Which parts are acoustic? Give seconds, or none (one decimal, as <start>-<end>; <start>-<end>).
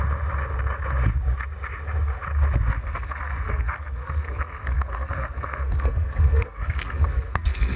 0.0-2.8